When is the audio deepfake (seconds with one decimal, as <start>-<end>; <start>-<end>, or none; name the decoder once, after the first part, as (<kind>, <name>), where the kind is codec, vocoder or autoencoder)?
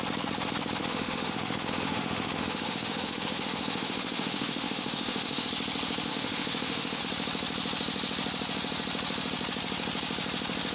0.8-5.5 (autoencoder, DAC-VAE); 6.1-7.0